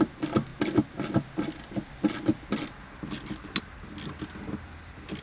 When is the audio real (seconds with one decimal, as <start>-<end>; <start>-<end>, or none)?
0.0-5.2